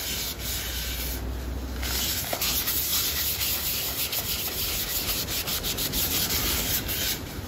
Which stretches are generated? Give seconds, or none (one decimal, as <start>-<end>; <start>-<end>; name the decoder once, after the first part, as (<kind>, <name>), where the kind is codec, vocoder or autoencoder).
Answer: 2.9-4.8 (vocoder, BigVGAN v2)